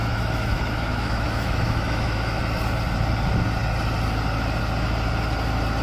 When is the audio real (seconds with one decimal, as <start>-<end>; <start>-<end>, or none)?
2.4-5.8